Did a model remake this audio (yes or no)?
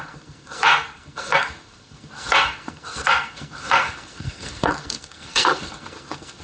yes